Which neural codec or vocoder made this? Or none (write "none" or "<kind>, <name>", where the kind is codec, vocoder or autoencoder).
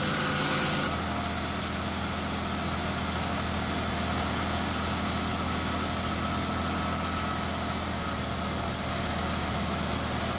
none